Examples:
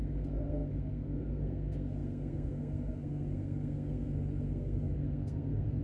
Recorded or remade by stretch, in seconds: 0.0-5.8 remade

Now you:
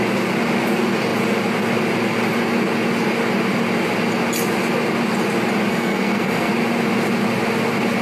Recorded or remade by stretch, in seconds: 0.0-5.7 recorded; 5.7-6.5 remade; 6.5-8.0 recorded

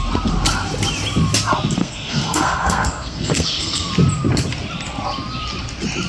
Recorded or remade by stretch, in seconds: 0.0-1.8 recorded; 1.8-3.9 remade; 3.9-6.1 recorded

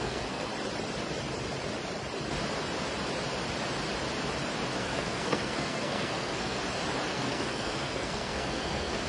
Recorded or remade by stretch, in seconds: 0.0-0.5 remade; 0.5-4.8 recorded; 4.8-6.6 remade; 6.6-7.1 recorded; 7.1-9.1 remade

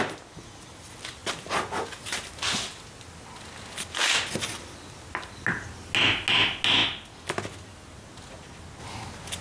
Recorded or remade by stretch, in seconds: 0.0-9.4 recorded

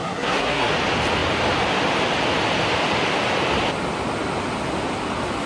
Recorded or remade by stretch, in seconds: 0.0-0.7 remade; 0.7-5.5 recorded

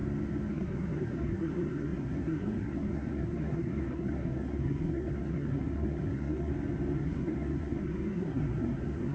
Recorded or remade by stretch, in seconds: 0.0-0.5 recorded; 0.5-6.5 remade; 6.5-7.0 recorded; 7.0-9.1 remade

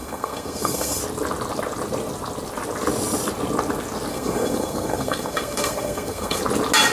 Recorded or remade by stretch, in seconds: 0.0-1.0 remade; 1.0-4.1 recorded; 4.1-6.4 remade; 6.4-6.9 recorded